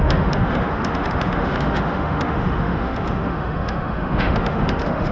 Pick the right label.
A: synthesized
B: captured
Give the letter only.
A